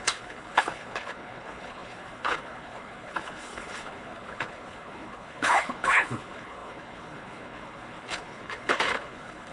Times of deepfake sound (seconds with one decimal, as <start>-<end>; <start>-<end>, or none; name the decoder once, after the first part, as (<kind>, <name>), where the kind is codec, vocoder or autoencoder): 0.0-9.5 (codec, HILCodec)